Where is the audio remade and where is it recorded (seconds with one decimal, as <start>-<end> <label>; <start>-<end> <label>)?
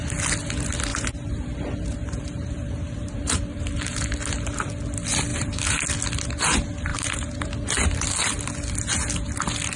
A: 0.0-0.9 recorded; 0.9-4.1 remade; 4.1-5.3 recorded; 5.3-5.8 remade; 5.8-6.9 recorded; 6.9-7.5 remade; 7.5-9.8 recorded